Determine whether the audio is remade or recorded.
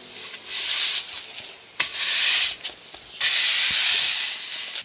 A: recorded